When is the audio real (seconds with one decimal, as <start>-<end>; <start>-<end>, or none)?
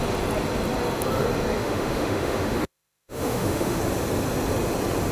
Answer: 0.0-1.6; 3.8-5.1